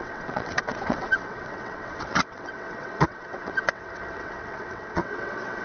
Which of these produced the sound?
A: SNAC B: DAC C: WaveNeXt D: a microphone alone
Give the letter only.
C